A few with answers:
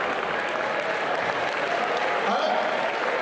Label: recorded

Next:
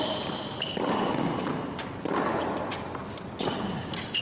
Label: recorded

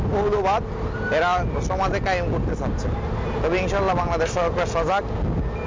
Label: recorded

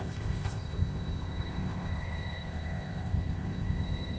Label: remade